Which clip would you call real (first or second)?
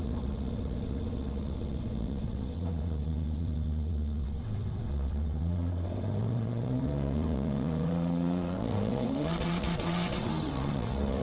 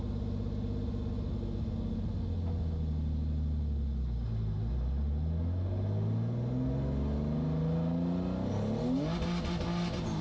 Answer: second